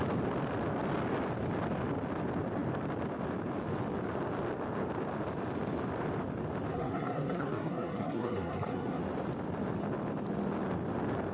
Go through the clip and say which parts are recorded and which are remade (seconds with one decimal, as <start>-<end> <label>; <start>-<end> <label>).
0.0-6.7 recorded; 6.7-9.0 remade; 9.0-11.3 recorded